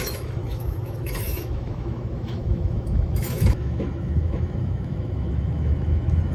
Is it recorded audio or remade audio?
remade